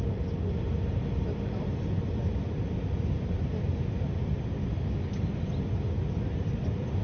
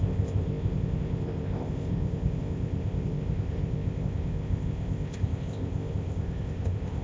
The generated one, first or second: second